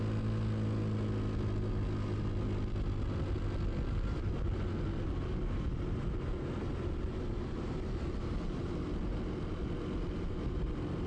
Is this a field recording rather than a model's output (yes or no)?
yes